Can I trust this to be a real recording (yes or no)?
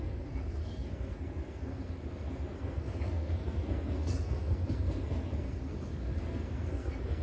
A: no